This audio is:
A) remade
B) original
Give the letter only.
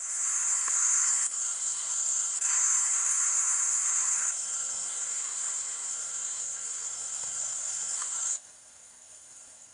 A